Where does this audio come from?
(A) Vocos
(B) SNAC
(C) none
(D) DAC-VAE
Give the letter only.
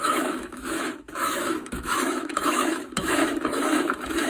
D